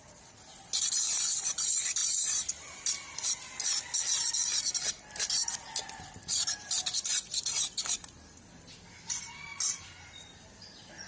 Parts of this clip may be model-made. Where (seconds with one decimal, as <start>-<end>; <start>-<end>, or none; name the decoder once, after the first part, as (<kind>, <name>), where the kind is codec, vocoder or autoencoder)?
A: 2.0-2.8 (vocoder, BigVGAN v2); 7.1-8.4